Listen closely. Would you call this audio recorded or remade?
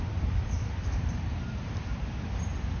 remade